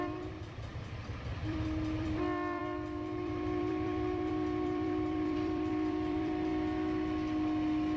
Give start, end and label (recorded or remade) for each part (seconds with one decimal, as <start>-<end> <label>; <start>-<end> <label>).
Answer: 0.0-6.5 remade; 6.5-8.0 recorded